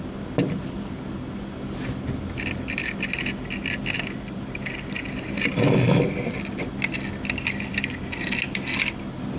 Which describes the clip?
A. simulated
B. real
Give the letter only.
B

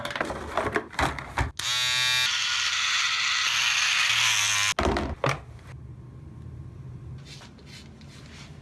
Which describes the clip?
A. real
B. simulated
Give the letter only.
A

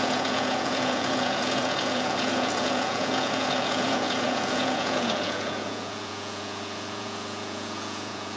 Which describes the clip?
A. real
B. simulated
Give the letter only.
B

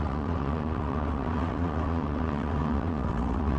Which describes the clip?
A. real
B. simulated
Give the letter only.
B